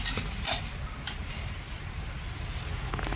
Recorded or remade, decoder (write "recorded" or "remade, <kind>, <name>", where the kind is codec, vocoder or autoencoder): recorded